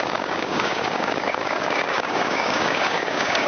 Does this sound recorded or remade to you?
remade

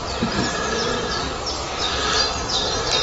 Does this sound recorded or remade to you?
recorded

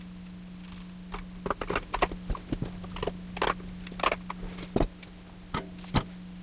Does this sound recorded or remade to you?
recorded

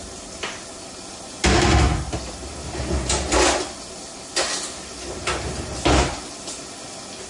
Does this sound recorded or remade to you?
recorded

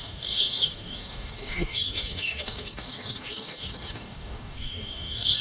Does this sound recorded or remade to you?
remade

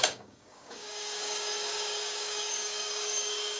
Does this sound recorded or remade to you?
remade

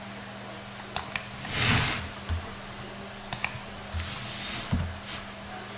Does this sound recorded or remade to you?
recorded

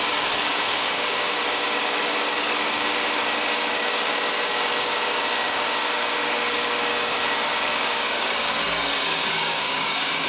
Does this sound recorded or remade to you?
remade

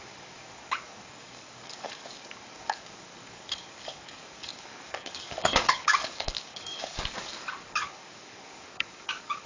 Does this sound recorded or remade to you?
remade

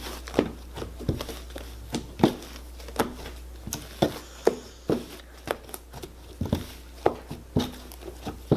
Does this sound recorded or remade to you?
recorded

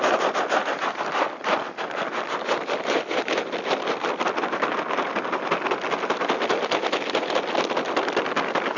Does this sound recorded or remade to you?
recorded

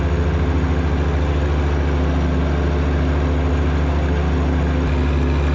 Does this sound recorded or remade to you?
recorded